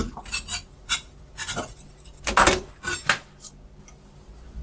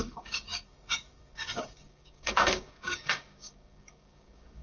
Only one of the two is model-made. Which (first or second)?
second